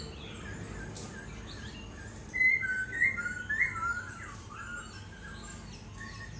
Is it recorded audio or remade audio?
recorded